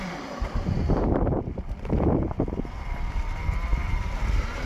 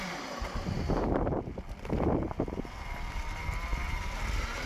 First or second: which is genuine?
second